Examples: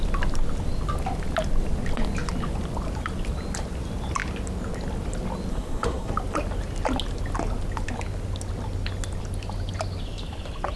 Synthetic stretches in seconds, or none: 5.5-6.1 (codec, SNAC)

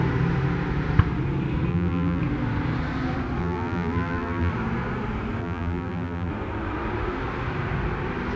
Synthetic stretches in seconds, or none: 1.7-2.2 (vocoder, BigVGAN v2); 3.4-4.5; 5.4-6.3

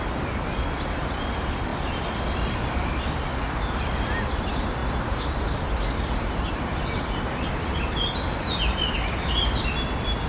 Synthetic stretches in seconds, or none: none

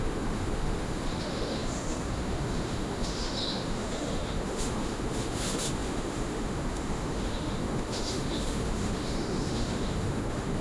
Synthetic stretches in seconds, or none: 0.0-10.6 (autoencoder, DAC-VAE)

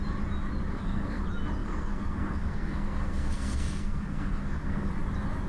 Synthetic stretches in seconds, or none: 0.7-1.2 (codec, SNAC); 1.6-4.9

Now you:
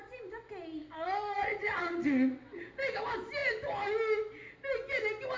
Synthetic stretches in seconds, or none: 0.8-2.6 (vocoder, WaveNeXt)

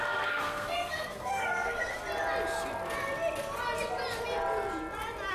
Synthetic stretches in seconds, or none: 0.0-2.0 (codec, SNAC)

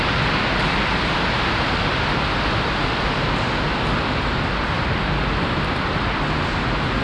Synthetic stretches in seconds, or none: none